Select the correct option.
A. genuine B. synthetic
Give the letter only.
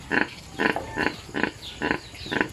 A